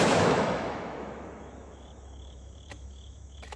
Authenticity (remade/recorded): remade